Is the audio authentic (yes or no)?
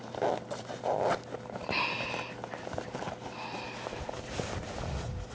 yes